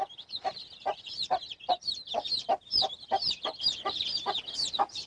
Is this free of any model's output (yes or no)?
yes